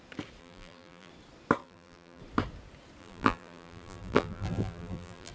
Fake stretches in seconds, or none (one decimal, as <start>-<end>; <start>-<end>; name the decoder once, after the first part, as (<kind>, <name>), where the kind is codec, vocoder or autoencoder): 0.4-1.1 (vocoder, BigVGAN v2); 1.6-2.2; 3.0-5.3